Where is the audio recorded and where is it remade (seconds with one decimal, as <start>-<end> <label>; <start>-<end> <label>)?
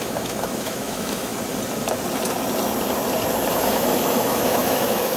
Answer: 0.0-1.3 remade; 1.3-3.5 recorded; 3.5-5.2 remade